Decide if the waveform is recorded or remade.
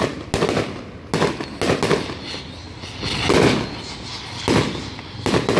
recorded